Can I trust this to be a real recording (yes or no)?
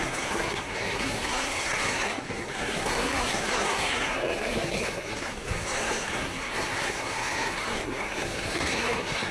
no